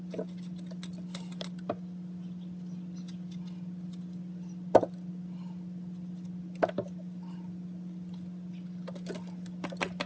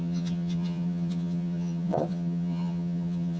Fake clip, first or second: second